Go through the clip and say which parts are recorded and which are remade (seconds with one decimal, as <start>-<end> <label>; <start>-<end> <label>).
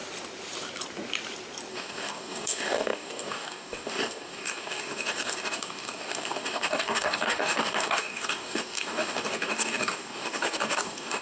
0.0-1.7 recorded; 1.7-11.2 remade